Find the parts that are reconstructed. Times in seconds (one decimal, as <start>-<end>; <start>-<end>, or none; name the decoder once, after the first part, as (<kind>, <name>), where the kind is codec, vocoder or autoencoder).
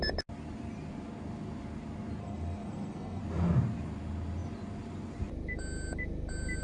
2.2-3.2 (codec, SNAC)